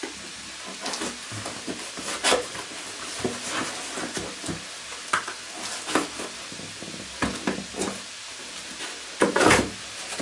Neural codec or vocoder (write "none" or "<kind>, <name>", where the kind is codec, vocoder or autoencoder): none